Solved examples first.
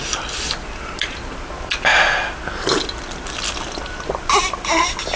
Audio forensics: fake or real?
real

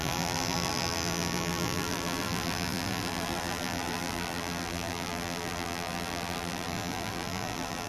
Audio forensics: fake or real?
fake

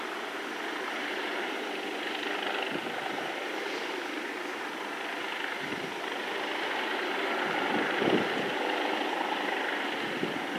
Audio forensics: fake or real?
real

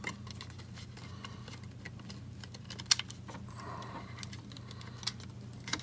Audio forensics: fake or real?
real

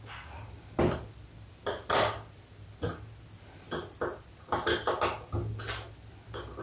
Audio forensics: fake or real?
real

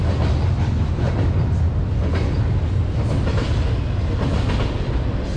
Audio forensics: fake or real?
real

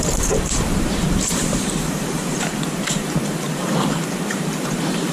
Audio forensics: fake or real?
fake